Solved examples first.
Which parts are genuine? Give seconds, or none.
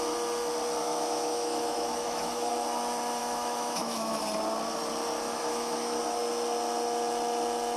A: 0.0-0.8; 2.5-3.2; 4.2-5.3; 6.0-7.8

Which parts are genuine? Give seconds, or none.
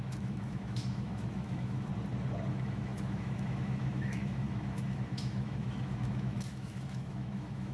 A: 1.9-2.5